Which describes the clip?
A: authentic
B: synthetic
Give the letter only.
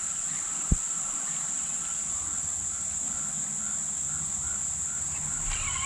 A